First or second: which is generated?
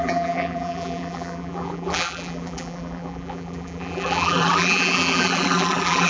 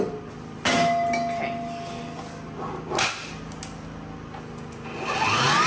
first